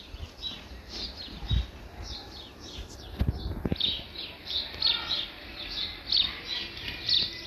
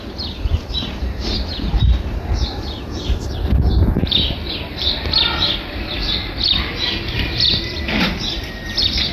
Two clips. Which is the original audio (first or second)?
first